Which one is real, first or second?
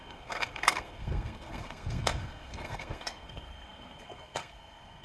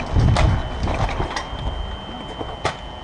second